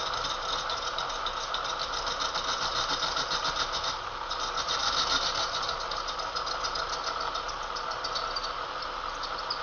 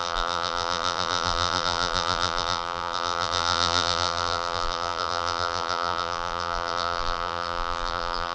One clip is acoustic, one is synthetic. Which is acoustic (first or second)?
first